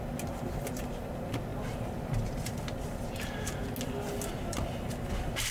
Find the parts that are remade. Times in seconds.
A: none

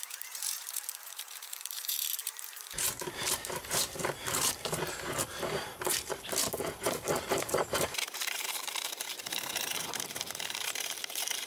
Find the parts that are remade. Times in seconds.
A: 0.0-6.4 (vocoder, BigVGAN v2); 7.4-11.5

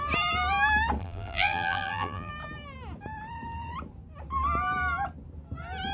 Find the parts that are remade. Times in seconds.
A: 1.0-2.3 (vocoder, BigVGAN v2)

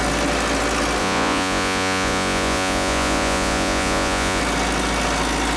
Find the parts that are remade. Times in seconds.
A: 1.0-4.4 (vocoder, Vocos)

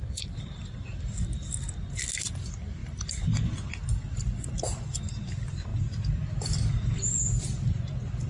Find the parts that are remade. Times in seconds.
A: none

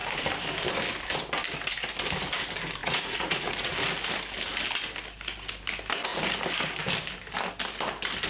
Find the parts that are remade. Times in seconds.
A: 2.8-3.7 (vocoder, Vocos)

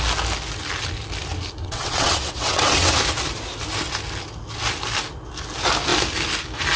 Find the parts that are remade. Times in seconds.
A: 1.6-2.9 (vocoder, WaveNeXt)

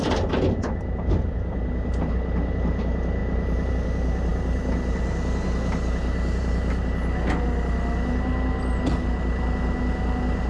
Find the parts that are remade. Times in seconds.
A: none